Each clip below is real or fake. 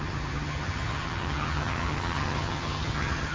fake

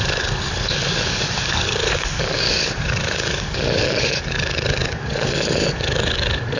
fake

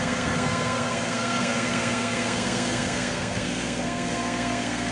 fake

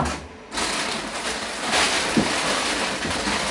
real